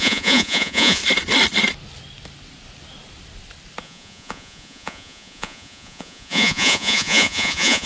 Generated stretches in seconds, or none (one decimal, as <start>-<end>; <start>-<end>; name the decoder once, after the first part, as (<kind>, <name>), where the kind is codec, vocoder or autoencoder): 0.0-1.0 (vocoder, Vocos); 3.8-7.9